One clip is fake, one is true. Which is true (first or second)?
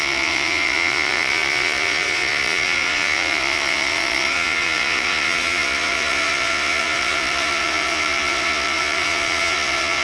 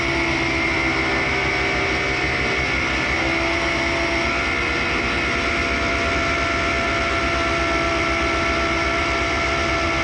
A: second